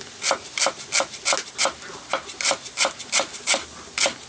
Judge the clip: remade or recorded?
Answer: recorded